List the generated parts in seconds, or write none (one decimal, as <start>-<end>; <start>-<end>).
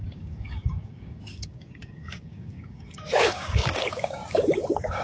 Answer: 0.0-5.0